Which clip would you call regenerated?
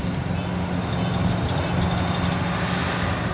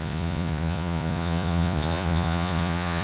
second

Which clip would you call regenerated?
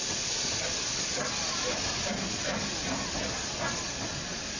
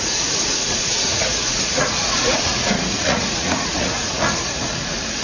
second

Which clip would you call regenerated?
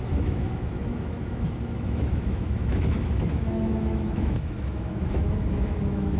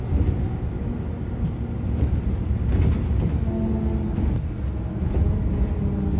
first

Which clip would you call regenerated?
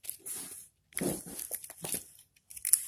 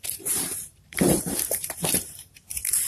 second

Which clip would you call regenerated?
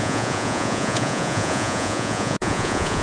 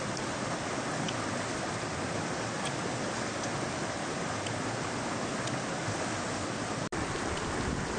first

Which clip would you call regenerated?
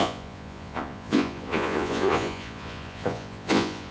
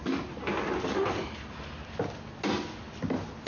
first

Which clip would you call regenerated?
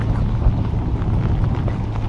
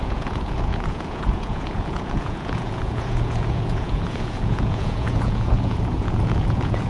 second